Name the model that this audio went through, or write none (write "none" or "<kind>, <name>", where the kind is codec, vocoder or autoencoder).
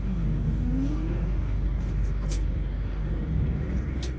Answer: codec, DAC